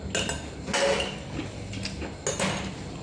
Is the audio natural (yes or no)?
yes